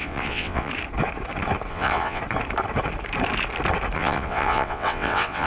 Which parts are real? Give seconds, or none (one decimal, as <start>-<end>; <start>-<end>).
0.7-1.7; 2.2-4.0